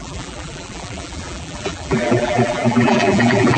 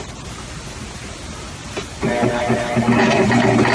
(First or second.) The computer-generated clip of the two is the first